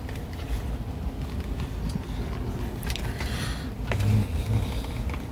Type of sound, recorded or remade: recorded